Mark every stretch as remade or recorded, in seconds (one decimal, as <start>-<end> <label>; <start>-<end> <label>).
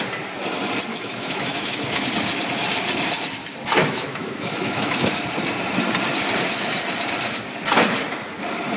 0.0-0.9 recorded; 0.9-2.1 remade; 2.1-3.8 recorded; 3.8-5.1 remade; 5.1-8.8 recorded